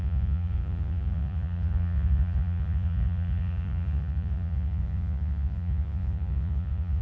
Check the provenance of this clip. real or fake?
fake